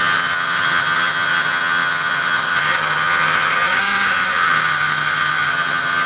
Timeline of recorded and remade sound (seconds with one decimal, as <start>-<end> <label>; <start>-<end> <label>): 0.0-6.1 remade